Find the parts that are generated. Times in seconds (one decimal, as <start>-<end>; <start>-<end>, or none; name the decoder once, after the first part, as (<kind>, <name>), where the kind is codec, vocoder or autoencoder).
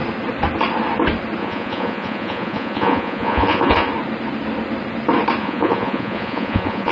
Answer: 1.4-3.9 (vocoder, Vocos); 5.4-6.9